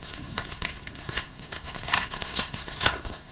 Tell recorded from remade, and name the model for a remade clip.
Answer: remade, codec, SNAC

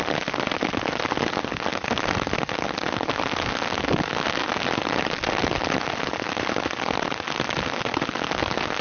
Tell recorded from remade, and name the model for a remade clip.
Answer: recorded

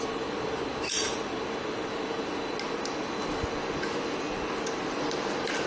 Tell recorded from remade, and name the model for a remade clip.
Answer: recorded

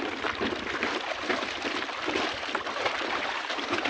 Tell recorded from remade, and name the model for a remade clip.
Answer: recorded